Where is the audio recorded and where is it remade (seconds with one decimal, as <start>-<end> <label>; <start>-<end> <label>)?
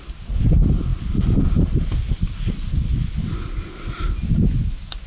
0.0-5.1 recorded